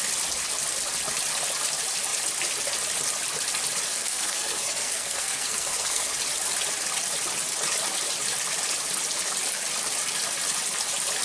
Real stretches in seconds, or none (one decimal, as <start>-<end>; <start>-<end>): 0.0-3.9; 6.1-11.2